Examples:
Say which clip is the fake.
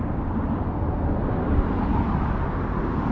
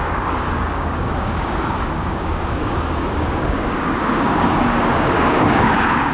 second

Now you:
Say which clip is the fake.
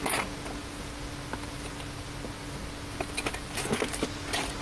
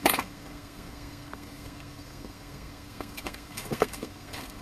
second